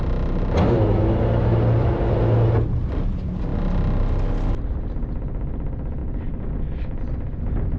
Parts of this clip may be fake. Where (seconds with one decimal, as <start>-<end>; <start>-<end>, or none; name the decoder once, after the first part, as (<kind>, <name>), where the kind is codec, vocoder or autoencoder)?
none

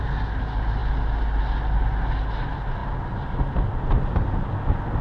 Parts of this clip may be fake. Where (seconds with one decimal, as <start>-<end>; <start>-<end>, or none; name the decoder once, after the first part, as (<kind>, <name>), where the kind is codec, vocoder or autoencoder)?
none